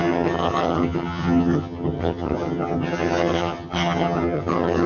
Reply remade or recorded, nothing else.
remade